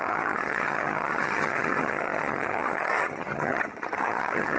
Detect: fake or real fake